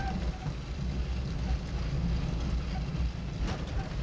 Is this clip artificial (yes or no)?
no